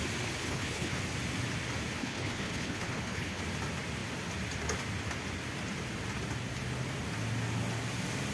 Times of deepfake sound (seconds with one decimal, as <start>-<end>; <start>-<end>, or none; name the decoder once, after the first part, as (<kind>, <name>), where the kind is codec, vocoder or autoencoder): 0.4-1.0 (codec, HILCodec); 2.0-3.4